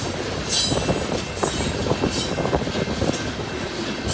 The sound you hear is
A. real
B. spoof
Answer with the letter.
A